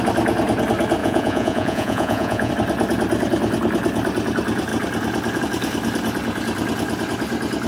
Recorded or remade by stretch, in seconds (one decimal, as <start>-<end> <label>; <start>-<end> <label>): 0.0-1.0 recorded; 1.0-2.5 remade; 2.5-7.7 recorded